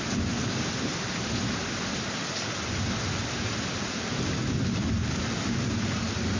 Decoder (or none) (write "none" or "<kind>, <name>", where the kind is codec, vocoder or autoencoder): none